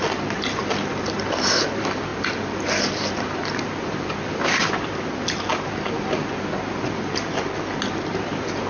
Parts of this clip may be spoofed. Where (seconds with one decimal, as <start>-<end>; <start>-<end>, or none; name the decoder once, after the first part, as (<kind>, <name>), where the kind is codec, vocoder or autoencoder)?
none